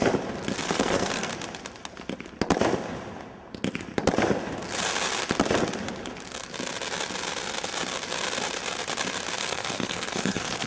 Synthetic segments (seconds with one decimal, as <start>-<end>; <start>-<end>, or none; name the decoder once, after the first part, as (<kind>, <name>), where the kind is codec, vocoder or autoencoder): 0.6-1.3 (codec, SNAC); 9.4-10.7